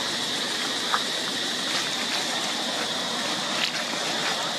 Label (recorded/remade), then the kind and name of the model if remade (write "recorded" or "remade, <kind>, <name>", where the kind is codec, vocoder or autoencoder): recorded